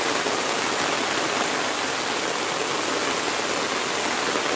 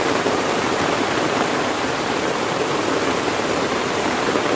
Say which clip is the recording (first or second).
first